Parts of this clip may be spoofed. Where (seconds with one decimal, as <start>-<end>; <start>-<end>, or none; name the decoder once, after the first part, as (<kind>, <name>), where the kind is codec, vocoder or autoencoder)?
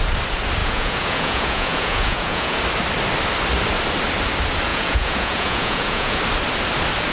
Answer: 0.6-2.6 (vocoder, Vocos); 4.7-6.2